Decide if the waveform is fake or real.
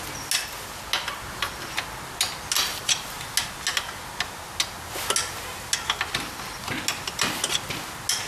real